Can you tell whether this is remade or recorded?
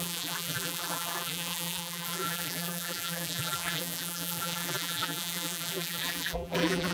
remade